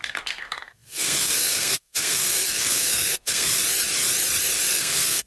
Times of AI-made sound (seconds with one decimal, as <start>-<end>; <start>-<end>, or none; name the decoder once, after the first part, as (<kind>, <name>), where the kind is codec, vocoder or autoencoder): 0.0-3.5 (codec, SNAC); 4.7-5.3